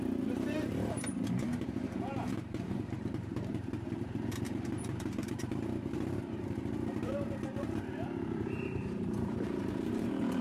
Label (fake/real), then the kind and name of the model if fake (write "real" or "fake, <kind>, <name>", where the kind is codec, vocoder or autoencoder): fake, vocoder, BigVGAN v2